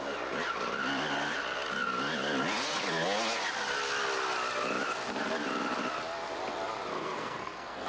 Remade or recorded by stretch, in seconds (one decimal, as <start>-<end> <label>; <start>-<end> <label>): 0.0-6.9 recorded; 6.9-7.9 remade

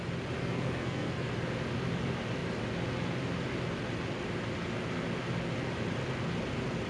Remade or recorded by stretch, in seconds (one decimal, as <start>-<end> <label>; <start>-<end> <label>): 0.0-0.4 recorded; 0.4-1.3 remade; 1.3-6.9 recorded